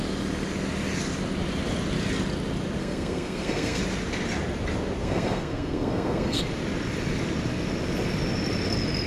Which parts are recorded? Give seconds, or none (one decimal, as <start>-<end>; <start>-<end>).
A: 0.0-2.8; 3.8-5.0; 6.4-9.1

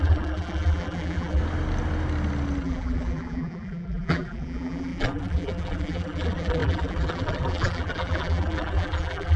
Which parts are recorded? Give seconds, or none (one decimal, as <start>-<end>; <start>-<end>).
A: 1.4-2.6

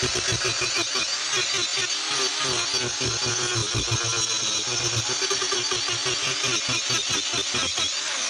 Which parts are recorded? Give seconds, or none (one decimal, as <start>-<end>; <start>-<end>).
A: 0.0-8.3

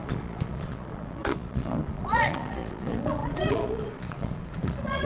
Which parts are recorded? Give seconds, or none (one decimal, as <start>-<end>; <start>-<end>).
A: none

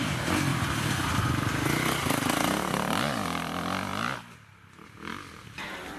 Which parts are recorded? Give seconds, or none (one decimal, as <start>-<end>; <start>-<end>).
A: 0.5-3.4; 3.9-5.1